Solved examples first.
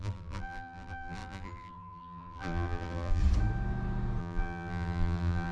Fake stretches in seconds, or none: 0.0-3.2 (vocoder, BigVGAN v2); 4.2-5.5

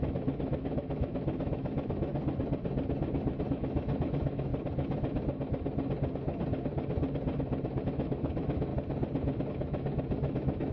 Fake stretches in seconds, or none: 0.0-2.1 (autoencoder, DAC-VAE); 3.5-4.5; 7.8-8.7; 9.5-10.7

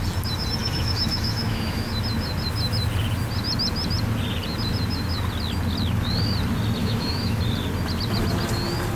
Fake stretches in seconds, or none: 0.6-1.9 (autoencoder, DAC-VAE); 6.8-7.4

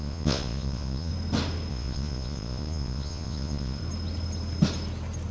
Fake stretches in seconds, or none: 0.0-1.1 (vocoder, Vocos); 1.7-3.8